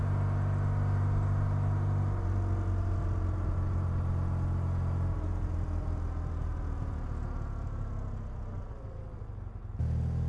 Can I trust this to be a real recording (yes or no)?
yes